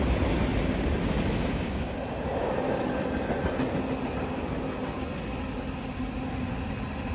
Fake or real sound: real